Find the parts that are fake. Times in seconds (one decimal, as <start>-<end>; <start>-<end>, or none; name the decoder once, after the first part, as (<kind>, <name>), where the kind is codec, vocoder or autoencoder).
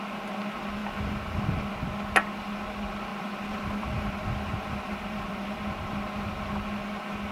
0.8-1.7 (vocoder, BigVGAN v2); 3.1-5.6